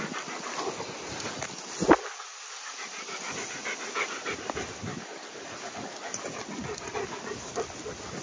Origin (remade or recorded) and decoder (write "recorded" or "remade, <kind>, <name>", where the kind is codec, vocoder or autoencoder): recorded